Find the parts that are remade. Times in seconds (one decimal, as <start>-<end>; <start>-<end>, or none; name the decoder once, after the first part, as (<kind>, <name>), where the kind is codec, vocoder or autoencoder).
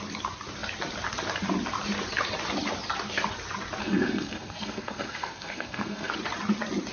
3.8-6.1 (codec, SNAC)